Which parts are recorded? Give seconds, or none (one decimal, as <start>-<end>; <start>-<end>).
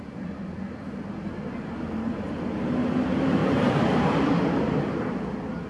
0.0-3.4; 4.4-5.7